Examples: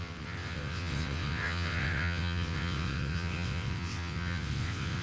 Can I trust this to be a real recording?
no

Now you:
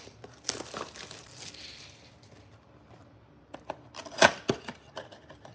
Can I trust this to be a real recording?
no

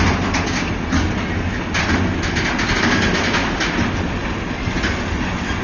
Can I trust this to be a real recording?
yes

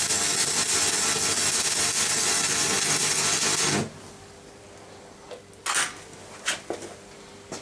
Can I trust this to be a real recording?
yes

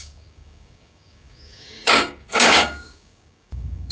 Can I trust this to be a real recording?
no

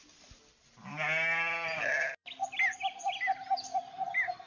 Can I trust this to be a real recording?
yes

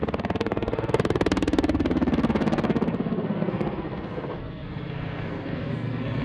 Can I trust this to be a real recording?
no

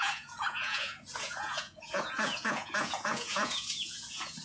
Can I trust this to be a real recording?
no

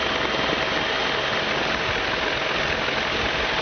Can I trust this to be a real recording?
yes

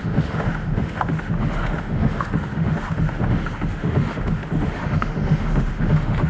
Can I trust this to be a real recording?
no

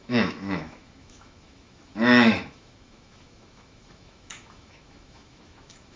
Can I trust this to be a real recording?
no